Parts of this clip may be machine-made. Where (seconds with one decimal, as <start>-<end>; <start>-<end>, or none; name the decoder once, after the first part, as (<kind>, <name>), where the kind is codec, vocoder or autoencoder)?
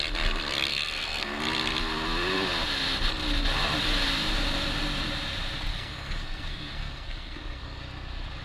0.7-1.4 (codec, SNAC); 5.7-7.8